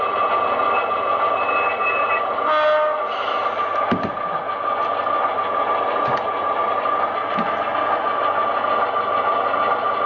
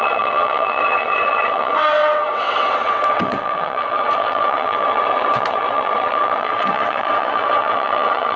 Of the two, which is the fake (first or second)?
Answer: second